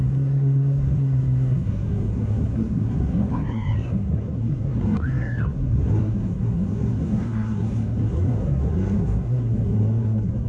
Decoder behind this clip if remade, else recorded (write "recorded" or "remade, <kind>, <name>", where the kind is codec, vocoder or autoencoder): remade, codec, SNAC